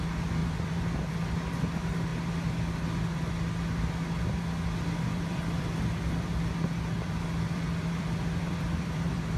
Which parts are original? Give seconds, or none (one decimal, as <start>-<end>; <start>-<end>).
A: 0.0-0.4; 1.1-5.1